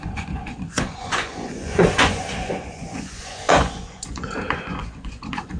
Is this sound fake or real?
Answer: fake